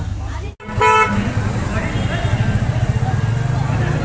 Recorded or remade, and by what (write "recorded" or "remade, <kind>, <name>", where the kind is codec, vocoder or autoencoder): recorded